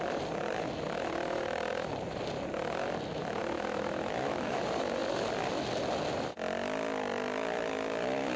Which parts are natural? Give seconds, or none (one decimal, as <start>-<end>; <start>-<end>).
0.0-3.4; 4.6-8.4